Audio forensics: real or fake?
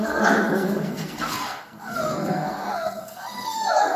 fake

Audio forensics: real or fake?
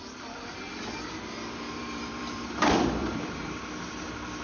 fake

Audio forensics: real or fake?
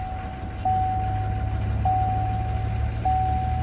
real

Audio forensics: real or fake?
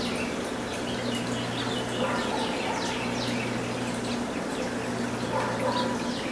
real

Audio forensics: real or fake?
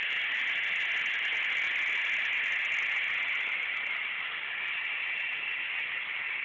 real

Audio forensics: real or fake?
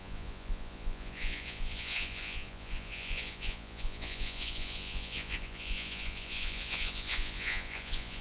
fake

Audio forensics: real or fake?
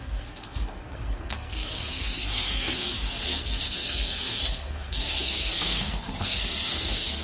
fake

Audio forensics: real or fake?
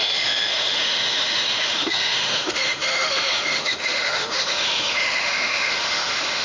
fake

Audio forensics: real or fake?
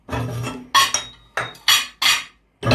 real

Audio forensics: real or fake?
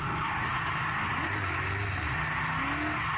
real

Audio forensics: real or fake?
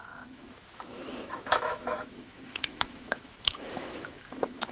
fake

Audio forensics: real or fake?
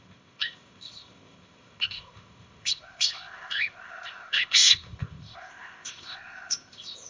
fake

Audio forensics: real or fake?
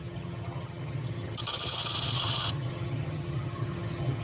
fake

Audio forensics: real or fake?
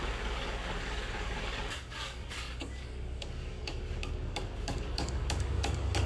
fake